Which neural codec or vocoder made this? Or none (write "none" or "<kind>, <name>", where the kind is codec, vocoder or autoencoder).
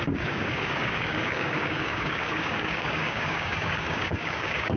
codec, DAC